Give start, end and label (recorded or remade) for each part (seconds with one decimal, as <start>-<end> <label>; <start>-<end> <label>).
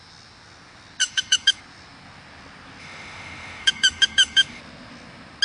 0.0-1.0 recorded; 1.0-1.6 remade; 1.6-2.8 recorded; 2.8-4.6 remade; 4.6-5.4 recorded